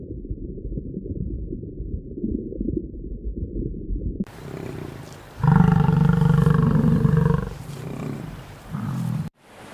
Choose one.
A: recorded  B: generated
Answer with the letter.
B